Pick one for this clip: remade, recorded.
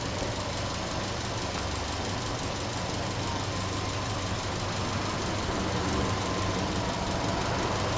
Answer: recorded